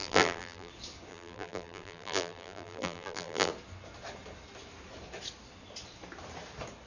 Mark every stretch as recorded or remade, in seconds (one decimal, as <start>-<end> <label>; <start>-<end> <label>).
0.0-0.7 remade; 0.7-1.1 recorded; 1.1-3.5 remade; 3.5-6.9 recorded